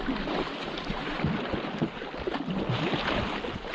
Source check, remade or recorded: recorded